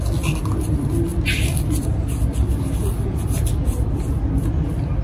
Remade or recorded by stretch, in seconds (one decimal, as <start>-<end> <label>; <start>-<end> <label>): 0.0-5.0 recorded